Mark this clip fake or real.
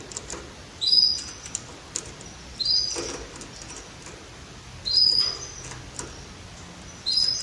real